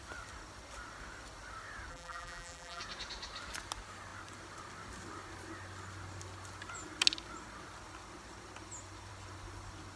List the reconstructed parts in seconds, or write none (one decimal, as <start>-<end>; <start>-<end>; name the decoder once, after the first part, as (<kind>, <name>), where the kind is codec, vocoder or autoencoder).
1.9-2.8 (vocoder, BigVGAN v2)